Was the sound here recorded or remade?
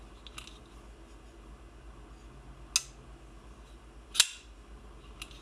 recorded